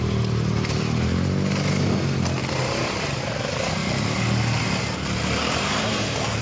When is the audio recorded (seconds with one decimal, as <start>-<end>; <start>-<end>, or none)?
0.0-6.4